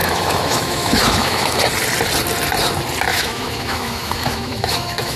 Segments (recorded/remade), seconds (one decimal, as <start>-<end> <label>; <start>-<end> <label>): 0.0-1.6 remade; 1.6-3.1 recorded; 3.1-5.2 remade